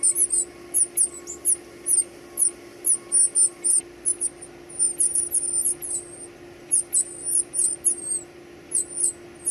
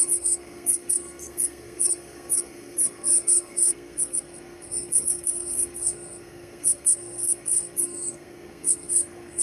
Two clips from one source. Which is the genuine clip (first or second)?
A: first